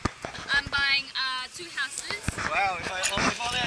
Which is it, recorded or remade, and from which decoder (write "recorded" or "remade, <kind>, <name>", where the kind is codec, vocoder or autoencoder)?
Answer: recorded